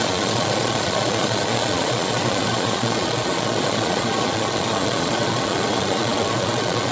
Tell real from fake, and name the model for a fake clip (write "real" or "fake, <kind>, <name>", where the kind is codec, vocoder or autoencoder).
fake, vocoder, Vocos